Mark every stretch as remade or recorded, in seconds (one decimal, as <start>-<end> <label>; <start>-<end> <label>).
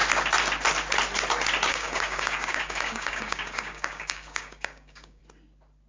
0.0-1.7 recorded; 1.7-5.2 remade; 5.2-5.9 recorded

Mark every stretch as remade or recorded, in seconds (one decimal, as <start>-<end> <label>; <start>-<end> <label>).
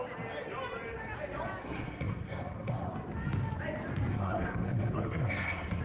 0.0-1.6 recorded; 1.6-2.9 remade; 2.9-4.1 recorded; 4.1-5.8 remade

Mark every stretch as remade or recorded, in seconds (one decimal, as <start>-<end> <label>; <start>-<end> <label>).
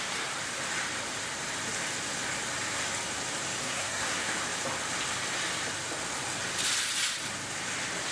0.0-3.6 recorded; 3.6-4.3 remade; 4.3-8.1 recorded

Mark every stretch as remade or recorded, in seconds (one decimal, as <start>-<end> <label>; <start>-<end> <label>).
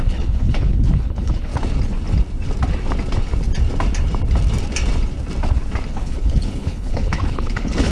0.0-1.5 remade; 1.5-5.9 recorded; 5.9-7.9 remade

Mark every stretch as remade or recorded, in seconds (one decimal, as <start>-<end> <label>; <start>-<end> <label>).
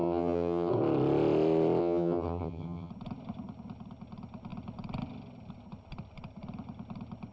0.0-0.7 remade; 0.7-1.8 recorded; 1.8-2.9 remade; 2.9-7.3 recorded